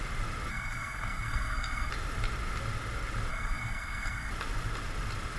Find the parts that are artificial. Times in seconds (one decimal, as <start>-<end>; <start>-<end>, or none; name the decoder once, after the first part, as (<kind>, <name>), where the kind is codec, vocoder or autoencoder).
0.5-1.9 (codec, SNAC); 3.3-4.3